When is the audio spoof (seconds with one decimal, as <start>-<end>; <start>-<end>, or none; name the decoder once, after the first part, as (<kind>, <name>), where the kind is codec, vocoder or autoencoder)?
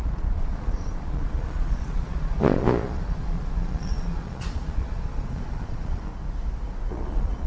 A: 0.0-6.1 (vocoder, Vocos); 6.9-7.5